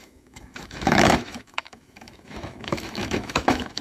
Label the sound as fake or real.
fake